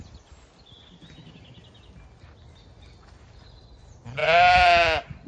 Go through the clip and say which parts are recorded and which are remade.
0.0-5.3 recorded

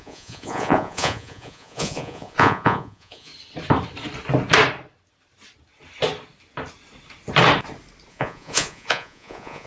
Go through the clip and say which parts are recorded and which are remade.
0.0-3.3 remade; 3.3-8.1 recorded; 8.1-9.7 remade